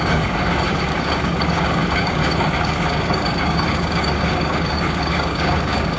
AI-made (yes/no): yes